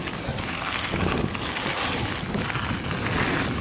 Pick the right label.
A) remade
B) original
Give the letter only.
B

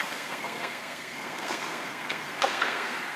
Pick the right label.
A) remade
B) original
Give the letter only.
A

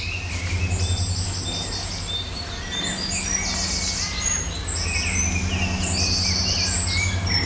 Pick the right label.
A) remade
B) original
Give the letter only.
B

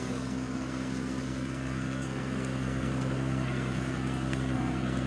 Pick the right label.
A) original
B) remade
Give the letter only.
B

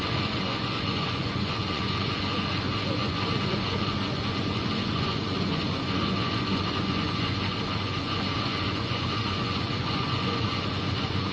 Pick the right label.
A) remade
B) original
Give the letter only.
A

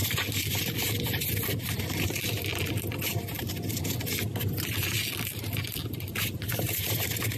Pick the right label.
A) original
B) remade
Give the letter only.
A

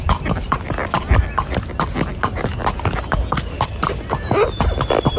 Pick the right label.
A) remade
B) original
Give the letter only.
B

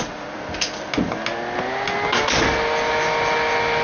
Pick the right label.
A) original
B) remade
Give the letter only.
A